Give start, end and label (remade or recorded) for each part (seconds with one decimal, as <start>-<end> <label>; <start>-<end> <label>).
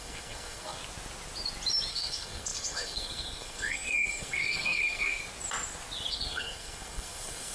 0.0-0.8 remade; 0.8-1.9 recorded; 1.9-5.2 remade; 5.2-6.1 recorded; 6.1-7.5 remade